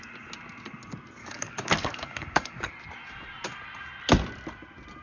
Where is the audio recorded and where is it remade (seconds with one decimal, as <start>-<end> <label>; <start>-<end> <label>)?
0.0-1.2 recorded; 1.2-2.7 remade; 2.7-5.0 recorded